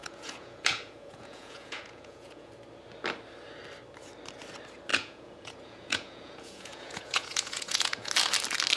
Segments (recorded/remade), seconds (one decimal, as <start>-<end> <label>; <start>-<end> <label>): 0.0-2.5 remade; 2.5-4.9 recorded; 4.9-8.1 remade; 8.1-8.8 recorded